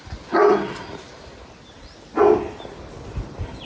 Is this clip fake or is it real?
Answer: real